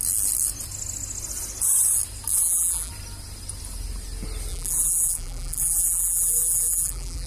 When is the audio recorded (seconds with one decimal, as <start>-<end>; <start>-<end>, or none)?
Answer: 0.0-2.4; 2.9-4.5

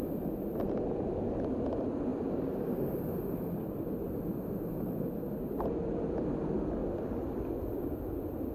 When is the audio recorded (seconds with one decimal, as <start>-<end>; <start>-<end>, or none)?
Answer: 0.0-8.5

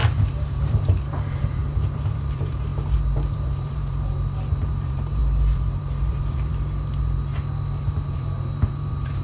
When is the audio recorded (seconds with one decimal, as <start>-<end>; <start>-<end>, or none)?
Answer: 7.3-7.8